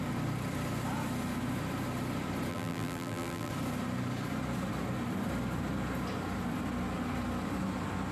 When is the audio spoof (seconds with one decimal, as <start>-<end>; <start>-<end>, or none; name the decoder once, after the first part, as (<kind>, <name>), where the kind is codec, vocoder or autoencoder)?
2.5-3.5 (vocoder, BigVGAN v2)